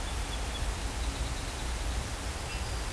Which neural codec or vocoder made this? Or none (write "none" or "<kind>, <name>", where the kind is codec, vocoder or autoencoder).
none